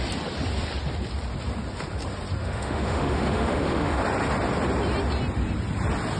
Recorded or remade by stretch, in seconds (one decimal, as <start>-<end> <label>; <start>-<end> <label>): 0.0-2.4 recorded; 2.4-4.0 remade; 4.0-6.2 recorded

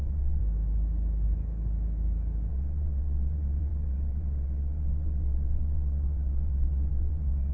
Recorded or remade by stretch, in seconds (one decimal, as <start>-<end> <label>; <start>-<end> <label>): 0.0-0.4 remade; 0.4-2.5 recorded; 2.5-7.5 remade